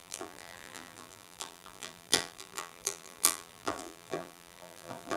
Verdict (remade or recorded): remade